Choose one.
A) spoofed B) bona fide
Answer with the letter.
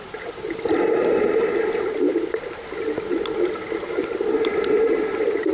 B